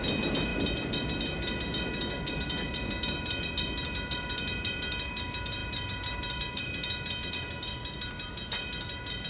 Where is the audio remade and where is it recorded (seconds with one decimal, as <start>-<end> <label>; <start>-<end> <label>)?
0.0-9.3 recorded

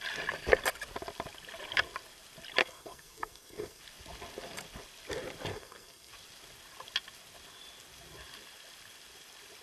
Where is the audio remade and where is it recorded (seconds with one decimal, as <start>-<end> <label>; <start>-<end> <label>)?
0.0-2.6 recorded; 2.6-3.8 remade; 3.8-5.5 recorded; 5.5-6.1 remade; 6.1-9.6 recorded

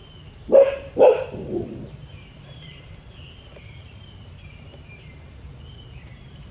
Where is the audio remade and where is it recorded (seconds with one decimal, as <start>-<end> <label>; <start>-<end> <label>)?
0.0-6.5 remade

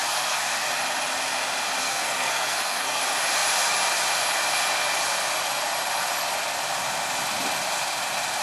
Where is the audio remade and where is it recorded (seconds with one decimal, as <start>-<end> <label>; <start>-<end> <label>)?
0.0-0.7 remade; 0.7-1.8 recorded; 1.8-3.0 remade; 3.0-8.4 recorded

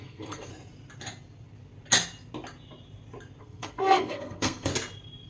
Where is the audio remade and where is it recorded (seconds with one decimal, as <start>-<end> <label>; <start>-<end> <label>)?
0.0-0.5 remade; 0.5-3.4 recorded; 3.4-4.7 remade; 4.7-5.3 recorded

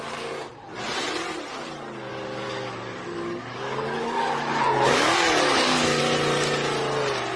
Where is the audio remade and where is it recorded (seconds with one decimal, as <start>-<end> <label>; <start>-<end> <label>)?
0.0-2.1 recorded; 2.1-6.0 remade; 6.0-7.4 recorded